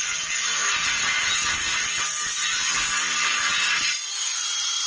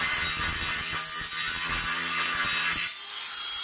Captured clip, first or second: second